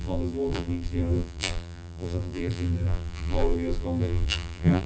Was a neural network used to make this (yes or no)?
yes